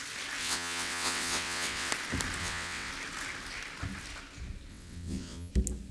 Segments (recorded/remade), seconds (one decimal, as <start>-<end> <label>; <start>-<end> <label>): 0.0-0.4 recorded; 0.4-1.9 remade; 1.9-2.4 recorded; 2.4-2.9 remade; 2.9-4.7 recorded; 4.7-5.5 remade; 5.5-5.9 recorded